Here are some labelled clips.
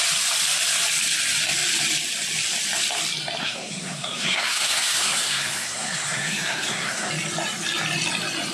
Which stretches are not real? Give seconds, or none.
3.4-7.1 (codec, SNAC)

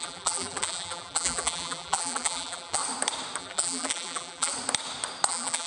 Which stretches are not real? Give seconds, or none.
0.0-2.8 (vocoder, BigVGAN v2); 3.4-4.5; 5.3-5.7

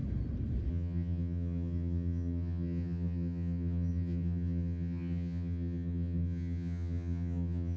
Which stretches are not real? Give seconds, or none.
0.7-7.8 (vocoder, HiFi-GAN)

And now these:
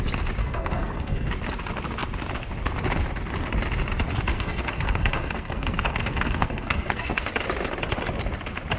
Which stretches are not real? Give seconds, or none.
0.4-1.3 (codec, SNAC); 4.3-7.3

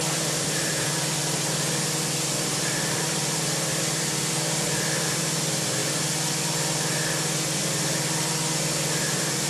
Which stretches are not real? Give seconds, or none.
0.0-1.2 (vocoder, BigVGAN v2); 2.5-5.8; 9.0-9.5

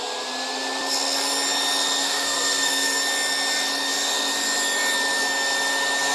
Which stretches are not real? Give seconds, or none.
2.0-3.0 (codec, SNAC)